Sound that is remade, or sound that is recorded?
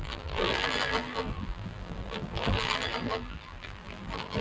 remade